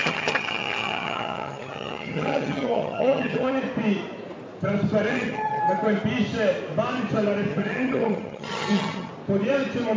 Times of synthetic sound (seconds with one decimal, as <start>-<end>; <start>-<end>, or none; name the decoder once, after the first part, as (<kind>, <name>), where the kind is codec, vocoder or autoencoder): 0.0-3.6 (vocoder, HiFi-GAN); 5.1-5.6; 7.5-9.1